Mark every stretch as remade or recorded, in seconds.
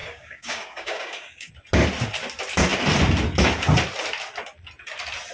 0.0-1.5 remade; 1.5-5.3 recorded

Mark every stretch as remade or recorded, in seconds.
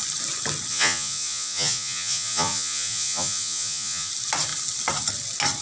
0.0-0.7 recorded; 0.7-4.1 remade; 4.1-5.6 recorded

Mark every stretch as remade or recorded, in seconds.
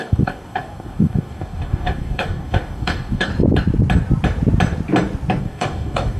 0.0-3.3 remade; 3.3-5.4 recorded; 5.4-6.2 remade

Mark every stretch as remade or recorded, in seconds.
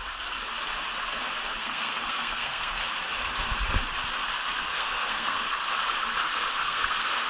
0.0-1.6 recorded; 1.6-2.7 remade; 2.7-4.7 recorded; 4.7-5.4 remade; 5.4-6.5 recorded; 6.5-7.3 remade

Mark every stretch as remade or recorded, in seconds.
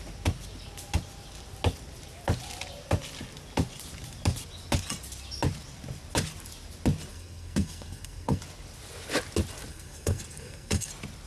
0.0-7.1 recorded; 7.1-8.4 remade; 8.4-9.7 recorded; 9.7-10.9 remade; 10.9-11.3 recorded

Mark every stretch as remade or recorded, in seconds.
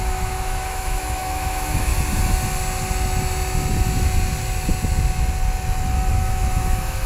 0.0-1.9 remade; 1.9-6.1 recorded; 6.1-7.1 remade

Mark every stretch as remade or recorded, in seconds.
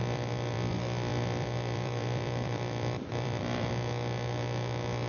0.0-0.7 remade; 0.7-1.1 recorded; 1.1-3.7 remade; 3.7-5.1 recorded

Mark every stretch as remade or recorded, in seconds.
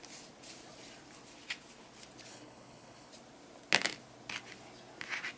0.0-2.3 recorded; 2.3-3.1 remade; 3.1-5.4 recorded